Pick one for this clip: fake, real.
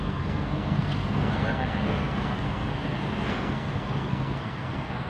fake